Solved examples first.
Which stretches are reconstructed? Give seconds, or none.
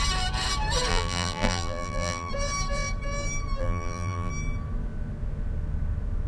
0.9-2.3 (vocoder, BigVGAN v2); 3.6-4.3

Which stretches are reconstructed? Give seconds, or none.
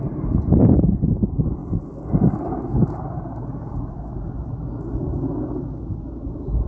0.0-1.6 (vocoder, BigVGAN v2); 2.7-4.4; 5.8-6.7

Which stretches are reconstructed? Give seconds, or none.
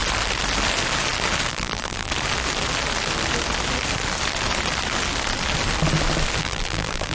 1.5-2.1 (vocoder, BigVGAN v2); 6.4-7.1